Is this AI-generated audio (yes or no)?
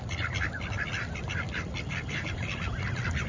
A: no